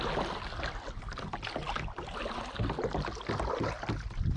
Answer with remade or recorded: recorded